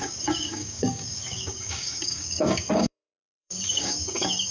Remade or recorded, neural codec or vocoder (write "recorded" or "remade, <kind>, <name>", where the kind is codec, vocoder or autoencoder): remade, codec, DAC